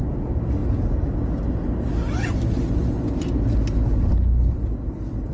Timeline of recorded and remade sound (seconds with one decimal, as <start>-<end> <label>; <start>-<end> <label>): 0.0-5.3 recorded